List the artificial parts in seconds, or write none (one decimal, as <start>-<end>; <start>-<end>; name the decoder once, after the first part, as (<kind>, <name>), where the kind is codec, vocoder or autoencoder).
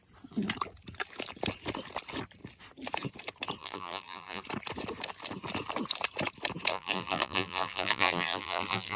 3.6-4.4 (vocoder, BigVGAN v2); 6.7-9.0